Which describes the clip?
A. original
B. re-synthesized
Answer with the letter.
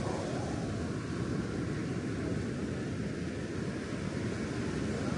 A